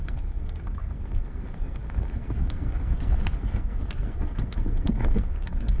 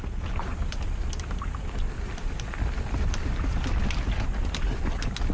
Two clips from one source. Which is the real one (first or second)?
second